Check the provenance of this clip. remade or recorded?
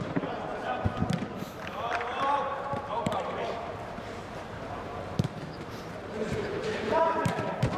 remade